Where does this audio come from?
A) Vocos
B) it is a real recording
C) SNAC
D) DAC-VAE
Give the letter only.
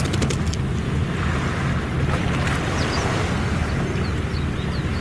B